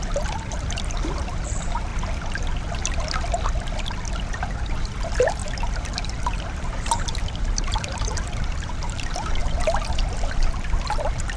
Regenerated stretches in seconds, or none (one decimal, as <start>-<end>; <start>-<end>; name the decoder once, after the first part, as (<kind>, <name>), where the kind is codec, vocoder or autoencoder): 0.0-1.9 (vocoder, BigVGAN v2); 4.3-11.4